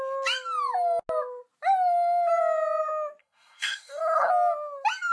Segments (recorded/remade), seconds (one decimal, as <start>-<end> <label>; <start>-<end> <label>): 0.0-3.2 recorded; 3.2-4.3 remade; 4.3-5.1 recorded